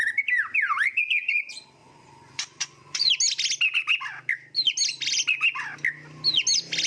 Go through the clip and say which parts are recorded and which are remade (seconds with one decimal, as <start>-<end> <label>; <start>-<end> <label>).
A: 0.0-1.8 recorded; 1.8-3.1 remade; 3.1-6.9 recorded